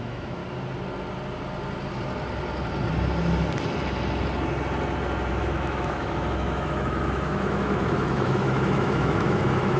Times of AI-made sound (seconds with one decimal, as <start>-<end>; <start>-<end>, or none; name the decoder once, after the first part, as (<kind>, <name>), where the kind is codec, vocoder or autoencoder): 0.0-0.4 (autoencoder, DAC-VAE); 5.3-9.8